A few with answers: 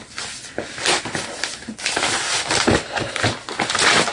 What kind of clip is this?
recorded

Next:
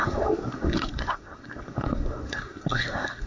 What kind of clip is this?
remade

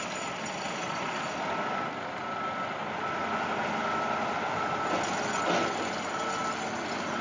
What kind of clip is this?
recorded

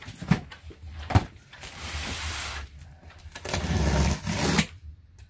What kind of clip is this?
recorded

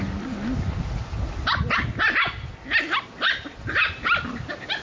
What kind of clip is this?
recorded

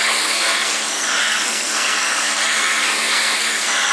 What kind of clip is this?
remade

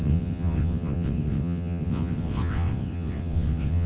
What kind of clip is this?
remade